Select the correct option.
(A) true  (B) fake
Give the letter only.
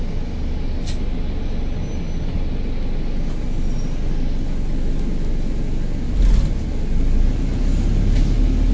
A